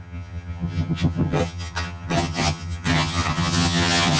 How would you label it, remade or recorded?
remade